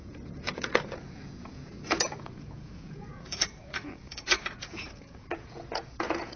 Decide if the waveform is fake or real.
fake